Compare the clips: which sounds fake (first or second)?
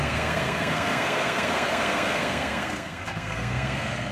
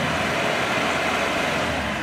first